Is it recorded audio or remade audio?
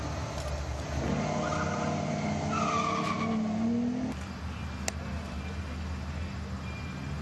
recorded